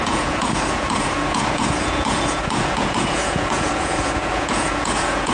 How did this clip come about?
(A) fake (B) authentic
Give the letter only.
A